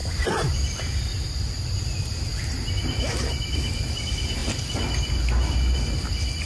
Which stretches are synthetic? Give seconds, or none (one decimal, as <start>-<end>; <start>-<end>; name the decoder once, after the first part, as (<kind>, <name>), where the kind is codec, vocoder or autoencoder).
none